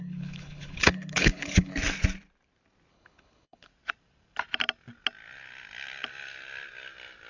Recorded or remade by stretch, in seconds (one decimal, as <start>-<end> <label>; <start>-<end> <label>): 0.0-1.7 remade; 1.7-2.9 recorded; 2.9-3.7 remade; 3.7-7.3 recorded